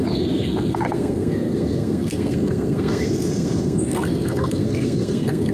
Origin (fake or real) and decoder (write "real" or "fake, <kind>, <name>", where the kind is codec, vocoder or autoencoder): fake, codec, SNAC